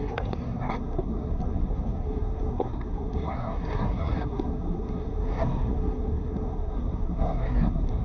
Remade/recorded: remade